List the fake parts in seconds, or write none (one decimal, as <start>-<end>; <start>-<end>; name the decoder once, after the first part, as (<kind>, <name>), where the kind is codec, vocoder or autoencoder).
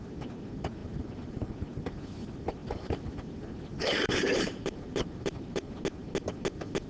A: 0.8-1.5 (vocoder, BigVGAN v2); 2.6-3.1; 3.7-5.7